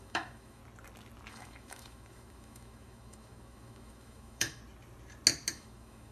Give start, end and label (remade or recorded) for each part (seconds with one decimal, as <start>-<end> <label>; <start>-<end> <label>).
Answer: 0.0-0.6 remade; 0.6-1.3 recorded; 1.3-4.6 remade; 4.6-5.5 recorded; 5.5-6.1 remade